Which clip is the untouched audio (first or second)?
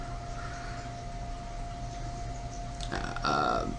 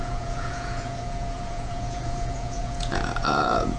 first